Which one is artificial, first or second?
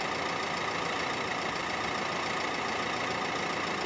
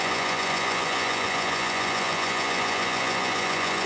second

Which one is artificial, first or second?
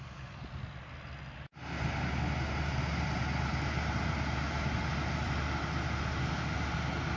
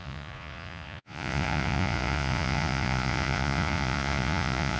second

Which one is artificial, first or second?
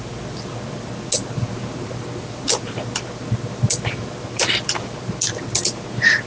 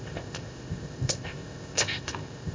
second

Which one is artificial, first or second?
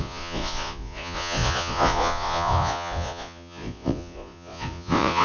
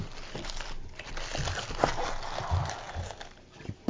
first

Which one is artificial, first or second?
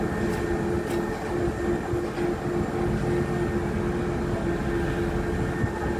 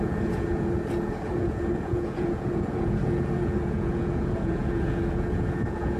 second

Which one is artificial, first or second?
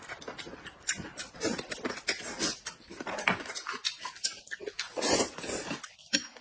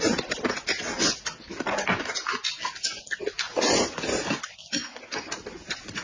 first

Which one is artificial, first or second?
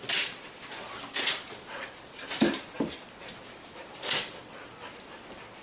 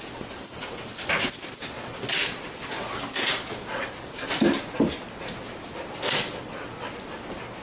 first